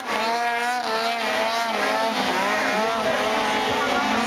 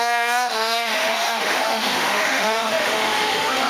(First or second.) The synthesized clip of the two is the second